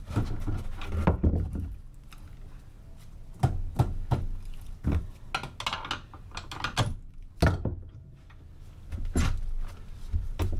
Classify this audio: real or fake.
real